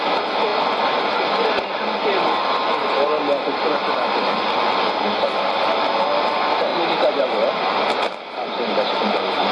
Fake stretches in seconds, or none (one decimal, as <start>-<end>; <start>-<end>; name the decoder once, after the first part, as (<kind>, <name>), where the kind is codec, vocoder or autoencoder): 6.7-9.5 (vocoder, BigVGAN v2)